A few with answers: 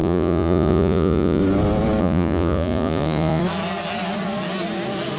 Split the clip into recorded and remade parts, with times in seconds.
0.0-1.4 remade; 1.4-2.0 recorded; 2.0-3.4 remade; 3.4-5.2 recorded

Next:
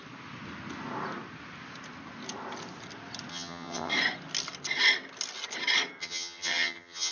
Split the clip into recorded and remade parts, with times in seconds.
0.0-3.3 recorded; 3.3-3.9 remade; 3.9-6.0 recorded; 6.0-7.1 remade

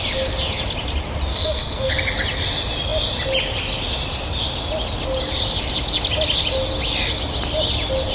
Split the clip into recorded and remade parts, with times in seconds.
0.0-1.3 recorded; 1.3-1.9 remade; 1.9-8.1 recorded